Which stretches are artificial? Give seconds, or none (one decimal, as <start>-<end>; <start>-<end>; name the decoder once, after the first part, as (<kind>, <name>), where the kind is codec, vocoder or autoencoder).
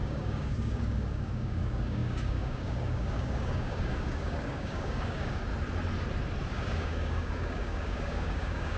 0.0-5.5 (codec, DAC); 6.5-8.8